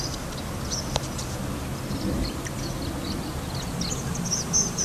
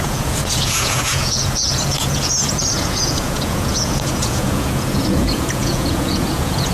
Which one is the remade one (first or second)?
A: second